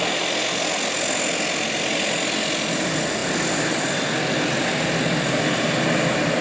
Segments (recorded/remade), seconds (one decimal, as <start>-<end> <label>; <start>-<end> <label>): 0.0-6.4 recorded